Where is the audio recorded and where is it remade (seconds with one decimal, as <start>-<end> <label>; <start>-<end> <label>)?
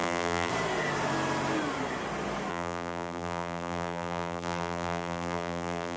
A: 0.0-0.5 remade; 0.5-2.5 recorded; 2.5-6.0 remade